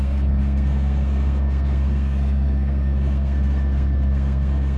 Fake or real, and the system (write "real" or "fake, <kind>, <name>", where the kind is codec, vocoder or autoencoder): fake, codec, SNAC